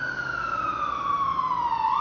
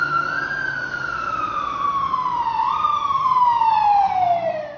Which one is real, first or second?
first